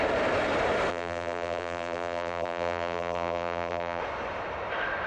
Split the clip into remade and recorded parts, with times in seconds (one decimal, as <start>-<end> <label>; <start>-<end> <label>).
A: 0.0-0.9 recorded; 0.9-4.0 remade; 4.0-5.1 recorded